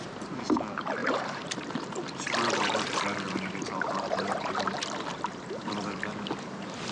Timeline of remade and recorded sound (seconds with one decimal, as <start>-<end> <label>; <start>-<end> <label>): 0.0-1.0 recorded; 1.0-4.5 remade; 4.5-5.1 recorded; 5.1-5.7 remade; 5.7-6.9 recorded